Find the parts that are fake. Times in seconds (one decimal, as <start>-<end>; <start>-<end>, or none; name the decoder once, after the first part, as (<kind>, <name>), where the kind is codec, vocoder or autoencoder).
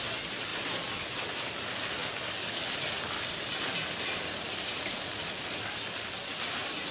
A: 0.5-1.2 (vocoder, BigVGAN v2); 2.0-5.2